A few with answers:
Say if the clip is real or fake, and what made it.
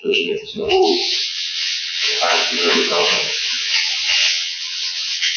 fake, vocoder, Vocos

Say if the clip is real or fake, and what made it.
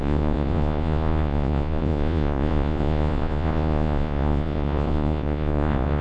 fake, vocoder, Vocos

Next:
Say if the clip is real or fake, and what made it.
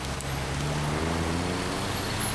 real